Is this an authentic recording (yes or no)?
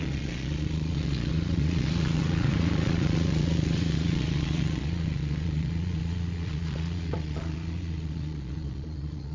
no